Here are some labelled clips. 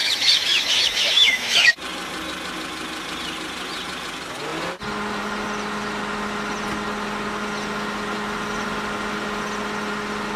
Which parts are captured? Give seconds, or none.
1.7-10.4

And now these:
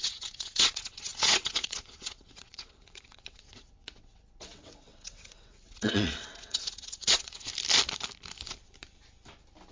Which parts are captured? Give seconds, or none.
7.5-9.7

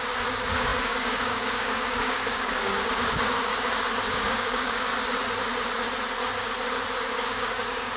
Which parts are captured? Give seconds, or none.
3.5-4.1; 4.9-7.1